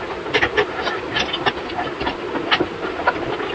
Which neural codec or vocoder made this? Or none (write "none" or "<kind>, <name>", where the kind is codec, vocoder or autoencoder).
none